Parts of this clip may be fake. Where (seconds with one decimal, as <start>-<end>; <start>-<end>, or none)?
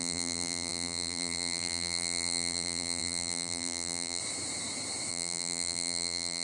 0.0-4.2; 5.1-6.4